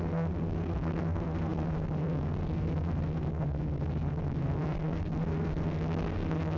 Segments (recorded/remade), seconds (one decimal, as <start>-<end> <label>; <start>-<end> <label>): 0.0-6.6 remade